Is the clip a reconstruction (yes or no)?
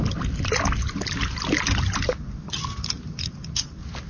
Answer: no